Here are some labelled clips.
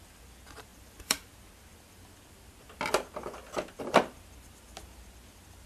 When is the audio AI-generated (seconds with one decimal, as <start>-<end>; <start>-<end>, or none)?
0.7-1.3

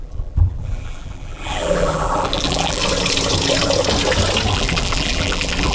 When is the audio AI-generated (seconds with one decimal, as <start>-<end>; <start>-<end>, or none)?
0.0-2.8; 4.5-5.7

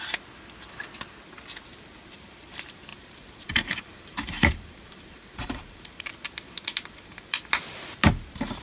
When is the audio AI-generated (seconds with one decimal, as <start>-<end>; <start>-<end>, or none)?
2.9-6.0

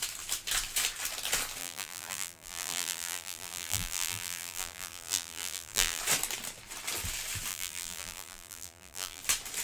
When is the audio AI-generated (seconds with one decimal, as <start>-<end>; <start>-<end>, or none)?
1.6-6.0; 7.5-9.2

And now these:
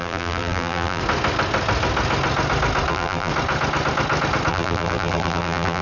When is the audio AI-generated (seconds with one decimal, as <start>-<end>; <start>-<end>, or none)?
0.0-1.0; 2.9-3.3; 4.5-5.8